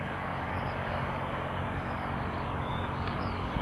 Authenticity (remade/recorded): remade